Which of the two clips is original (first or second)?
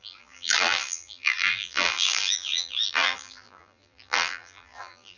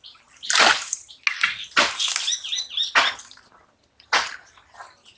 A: second